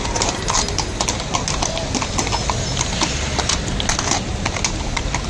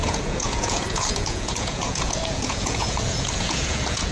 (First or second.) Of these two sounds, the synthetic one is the second